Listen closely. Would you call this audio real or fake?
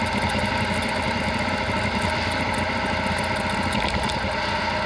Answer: real